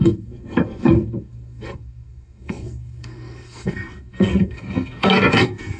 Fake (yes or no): yes